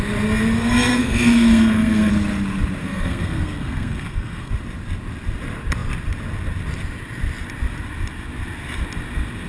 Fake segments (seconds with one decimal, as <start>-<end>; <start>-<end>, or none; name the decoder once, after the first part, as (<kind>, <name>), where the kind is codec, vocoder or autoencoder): 0.9-2.1 (codec, SNAC); 2.8-4.5